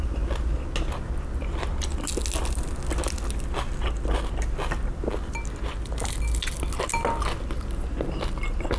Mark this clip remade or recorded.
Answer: recorded